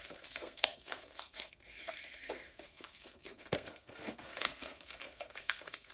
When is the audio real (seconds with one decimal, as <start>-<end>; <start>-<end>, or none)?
none